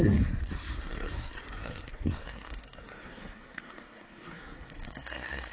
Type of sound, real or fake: fake